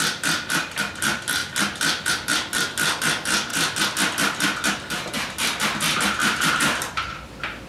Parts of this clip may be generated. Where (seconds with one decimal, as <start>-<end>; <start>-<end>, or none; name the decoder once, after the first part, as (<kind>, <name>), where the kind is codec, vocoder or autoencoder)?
6.2-7.1 (vocoder, BigVGAN v2)